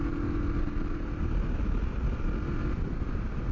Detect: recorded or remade recorded